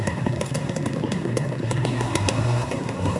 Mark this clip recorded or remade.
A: remade